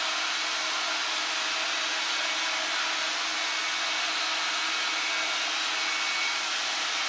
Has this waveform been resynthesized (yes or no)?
no